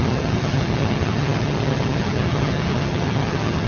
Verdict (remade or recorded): remade